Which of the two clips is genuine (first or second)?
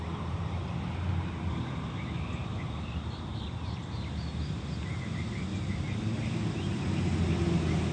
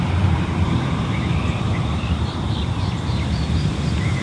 first